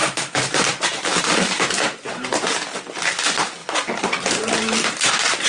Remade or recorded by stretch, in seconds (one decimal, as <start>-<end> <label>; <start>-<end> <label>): 0.0-5.5 remade